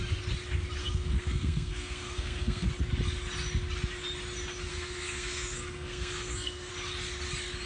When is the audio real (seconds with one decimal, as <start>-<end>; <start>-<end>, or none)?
0.0-0.8; 2.7-4.7; 6.7-7.7